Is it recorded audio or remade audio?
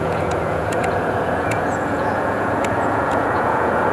remade